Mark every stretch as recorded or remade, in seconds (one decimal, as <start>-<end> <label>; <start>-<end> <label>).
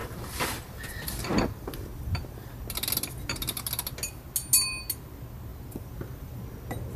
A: 0.0-7.0 recorded